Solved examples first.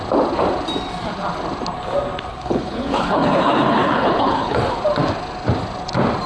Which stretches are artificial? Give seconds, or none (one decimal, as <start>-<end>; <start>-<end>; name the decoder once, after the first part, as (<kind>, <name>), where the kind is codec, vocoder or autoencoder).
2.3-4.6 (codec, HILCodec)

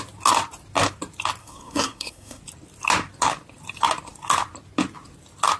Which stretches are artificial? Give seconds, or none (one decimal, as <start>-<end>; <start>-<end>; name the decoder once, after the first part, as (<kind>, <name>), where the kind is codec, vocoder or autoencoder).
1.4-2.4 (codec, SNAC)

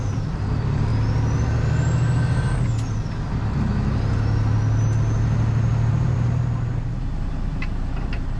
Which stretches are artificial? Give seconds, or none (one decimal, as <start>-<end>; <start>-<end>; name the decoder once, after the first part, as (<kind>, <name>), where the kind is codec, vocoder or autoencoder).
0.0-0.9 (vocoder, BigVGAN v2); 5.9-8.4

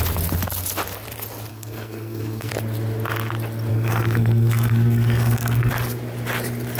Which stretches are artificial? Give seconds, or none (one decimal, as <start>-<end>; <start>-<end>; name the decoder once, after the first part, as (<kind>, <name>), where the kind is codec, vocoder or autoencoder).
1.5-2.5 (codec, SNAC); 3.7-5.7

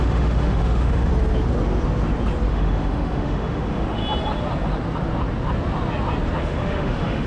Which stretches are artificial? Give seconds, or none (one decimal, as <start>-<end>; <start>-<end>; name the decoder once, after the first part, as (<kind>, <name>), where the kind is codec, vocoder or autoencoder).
0.0-1.1 (autoencoder, DAC-VAE); 2.5-4.0; 6.4-7.3

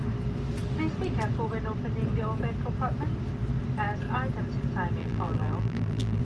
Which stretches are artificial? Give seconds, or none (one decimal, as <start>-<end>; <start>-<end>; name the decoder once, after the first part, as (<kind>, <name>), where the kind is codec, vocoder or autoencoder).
5.0-6.2 (vocoder, BigVGAN v2)

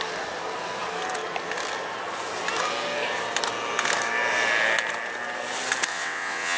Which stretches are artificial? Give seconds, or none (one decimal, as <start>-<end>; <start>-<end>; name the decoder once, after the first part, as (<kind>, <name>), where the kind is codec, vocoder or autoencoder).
5.9-6.6 (vocoder, WaveNeXt)